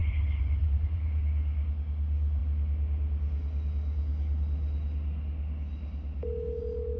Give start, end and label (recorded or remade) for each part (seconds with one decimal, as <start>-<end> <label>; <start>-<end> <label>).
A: 0.0-1.2 remade; 1.2-7.0 recorded